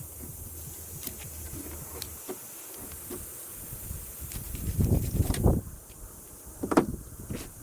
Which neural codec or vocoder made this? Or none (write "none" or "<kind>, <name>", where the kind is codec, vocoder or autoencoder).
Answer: vocoder, BigVGAN v2